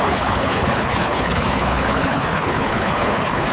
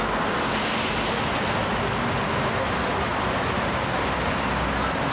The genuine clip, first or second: second